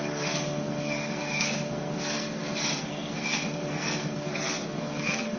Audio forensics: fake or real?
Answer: fake